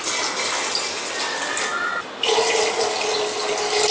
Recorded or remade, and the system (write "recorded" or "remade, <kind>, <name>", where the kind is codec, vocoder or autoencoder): recorded